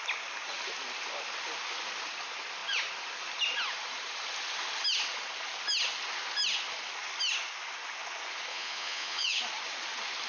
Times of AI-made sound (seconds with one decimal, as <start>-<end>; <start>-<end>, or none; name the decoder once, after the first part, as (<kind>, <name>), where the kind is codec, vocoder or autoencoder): 8.5-9.4 (vocoder, Vocos)